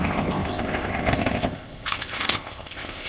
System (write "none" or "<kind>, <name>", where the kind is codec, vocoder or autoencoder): codec, ZipCodec